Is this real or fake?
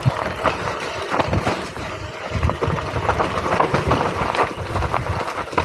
real